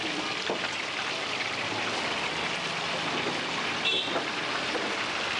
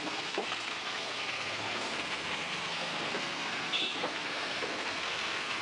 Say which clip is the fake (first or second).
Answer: second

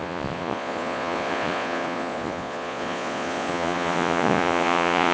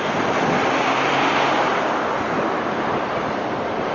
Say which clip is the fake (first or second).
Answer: first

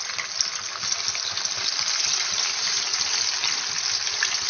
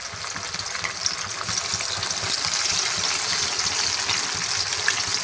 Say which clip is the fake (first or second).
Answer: first